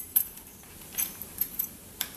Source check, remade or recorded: remade